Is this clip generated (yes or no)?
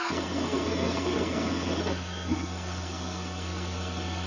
yes